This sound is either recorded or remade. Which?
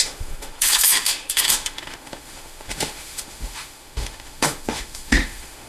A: remade